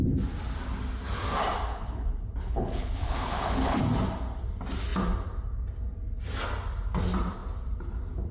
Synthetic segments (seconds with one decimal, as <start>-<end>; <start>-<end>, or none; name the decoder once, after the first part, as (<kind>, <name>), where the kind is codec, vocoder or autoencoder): 1.7-3.8 (codec, HILCodec)